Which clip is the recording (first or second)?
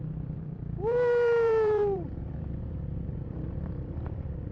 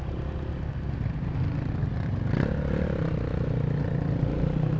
second